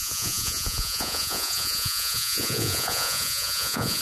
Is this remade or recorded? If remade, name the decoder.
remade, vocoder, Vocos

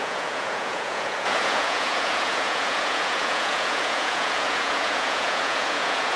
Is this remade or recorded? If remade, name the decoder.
remade, vocoder, Vocos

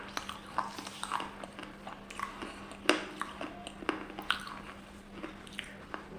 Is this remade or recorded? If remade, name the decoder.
recorded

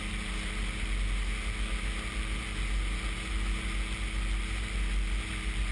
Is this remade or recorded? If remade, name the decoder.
recorded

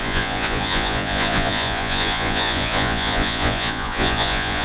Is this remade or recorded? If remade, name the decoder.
remade, vocoder, Vocos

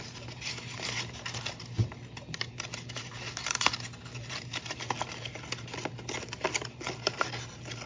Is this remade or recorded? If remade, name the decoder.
recorded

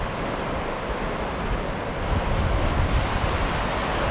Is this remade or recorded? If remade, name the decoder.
recorded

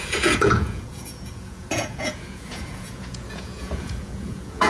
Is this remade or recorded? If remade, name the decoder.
remade, vocoder, Vocos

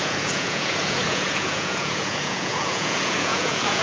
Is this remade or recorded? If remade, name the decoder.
remade, vocoder, Vocos